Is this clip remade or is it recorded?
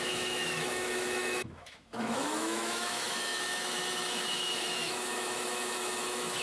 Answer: remade